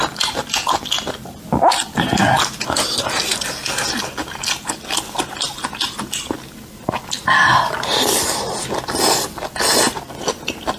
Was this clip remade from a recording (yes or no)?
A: no